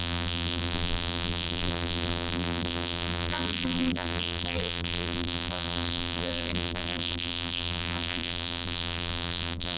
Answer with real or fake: fake